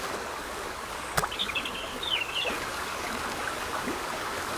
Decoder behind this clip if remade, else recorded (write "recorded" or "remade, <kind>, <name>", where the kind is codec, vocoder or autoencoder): remade, codec, DAC